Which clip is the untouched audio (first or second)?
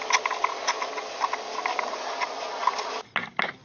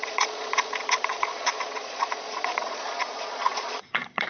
first